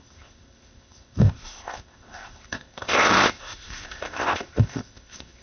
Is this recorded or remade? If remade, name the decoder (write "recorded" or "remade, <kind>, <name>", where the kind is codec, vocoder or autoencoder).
remade, codec, ZipCodec